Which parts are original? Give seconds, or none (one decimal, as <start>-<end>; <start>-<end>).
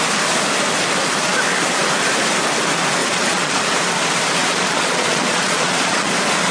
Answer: 0.0-3.0; 3.6-4.4; 6.1-6.5